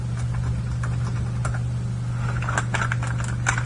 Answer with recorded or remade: recorded